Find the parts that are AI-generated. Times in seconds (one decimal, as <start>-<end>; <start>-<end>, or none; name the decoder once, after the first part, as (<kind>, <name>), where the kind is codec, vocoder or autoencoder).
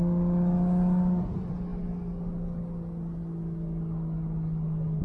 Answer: none